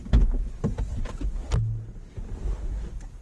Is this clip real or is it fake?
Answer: real